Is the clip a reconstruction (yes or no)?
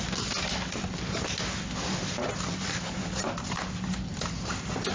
no